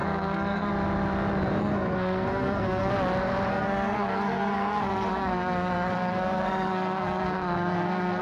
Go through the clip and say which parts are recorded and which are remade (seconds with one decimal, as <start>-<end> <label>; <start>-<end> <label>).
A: 0.0-0.7 remade; 0.7-1.6 recorded; 1.6-2.9 remade; 2.9-3.5 recorded; 3.5-8.2 remade